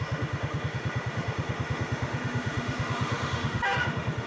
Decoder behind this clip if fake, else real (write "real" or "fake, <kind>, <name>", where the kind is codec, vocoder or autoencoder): fake, autoencoder, DAC-VAE